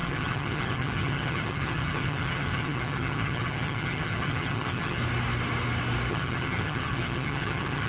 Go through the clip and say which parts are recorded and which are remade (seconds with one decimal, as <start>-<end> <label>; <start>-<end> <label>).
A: 0.0-5.0 remade; 5.0-6.1 recorded; 6.1-7.9 remade